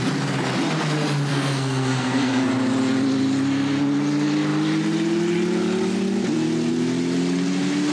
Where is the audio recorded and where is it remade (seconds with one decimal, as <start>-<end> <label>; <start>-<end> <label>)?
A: 0.0-1.3 recorded; 1.3-2.5 remade; 2.5-7.9 recorded